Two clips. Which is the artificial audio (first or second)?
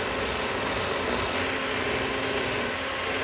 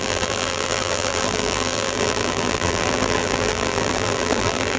second